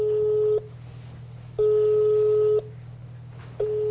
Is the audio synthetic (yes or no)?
no